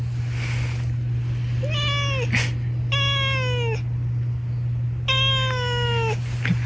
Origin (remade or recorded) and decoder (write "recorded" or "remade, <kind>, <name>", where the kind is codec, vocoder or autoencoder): recorded